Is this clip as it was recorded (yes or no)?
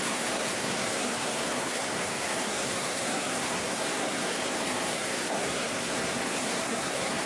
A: no